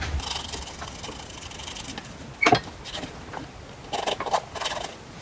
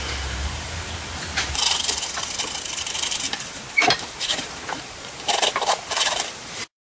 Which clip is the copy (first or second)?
second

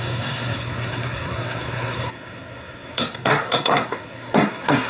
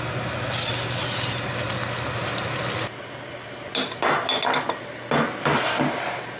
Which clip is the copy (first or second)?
first